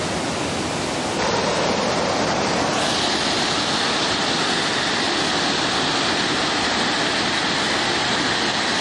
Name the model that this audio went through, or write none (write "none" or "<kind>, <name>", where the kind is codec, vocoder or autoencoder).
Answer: none